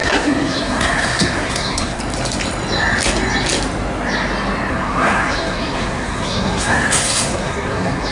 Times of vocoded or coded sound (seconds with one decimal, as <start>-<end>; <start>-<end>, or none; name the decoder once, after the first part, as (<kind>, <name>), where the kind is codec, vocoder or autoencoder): 0.0-2.0 (codec, SNAC); 4.7-8.1